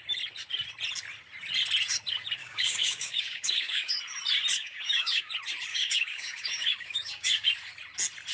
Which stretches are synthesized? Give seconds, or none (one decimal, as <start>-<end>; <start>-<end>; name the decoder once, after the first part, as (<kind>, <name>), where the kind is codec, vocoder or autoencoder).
2.4-3.9 (codec, DAC); 4.6-5.3; 5.7-7.5